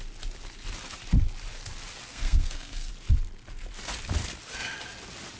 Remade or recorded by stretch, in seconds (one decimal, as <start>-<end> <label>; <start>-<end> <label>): 0.0-2.1 recorded; 2.1-2.9 remade; 2.9-5.4 recorded